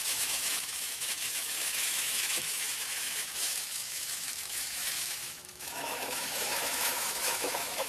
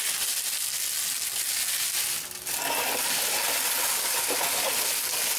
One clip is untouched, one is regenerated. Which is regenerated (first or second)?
first